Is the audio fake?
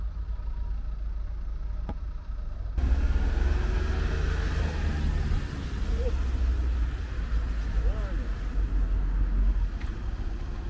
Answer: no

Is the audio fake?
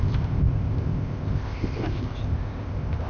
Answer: yes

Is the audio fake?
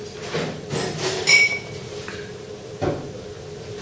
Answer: no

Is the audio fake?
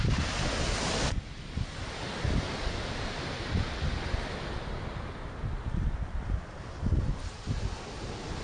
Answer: no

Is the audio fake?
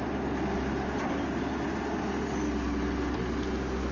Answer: no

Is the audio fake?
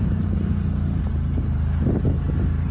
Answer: no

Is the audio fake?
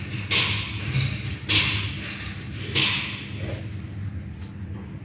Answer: no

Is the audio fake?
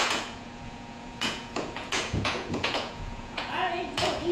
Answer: yes